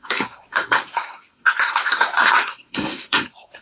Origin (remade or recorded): remade